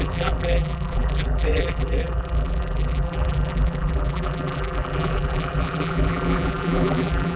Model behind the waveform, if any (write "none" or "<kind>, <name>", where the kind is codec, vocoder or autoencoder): vocoder, BigVGAN v2